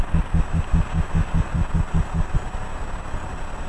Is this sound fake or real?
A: real